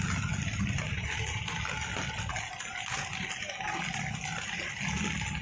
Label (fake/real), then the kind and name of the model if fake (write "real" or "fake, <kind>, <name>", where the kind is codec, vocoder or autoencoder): real